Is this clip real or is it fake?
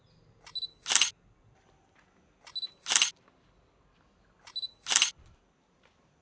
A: real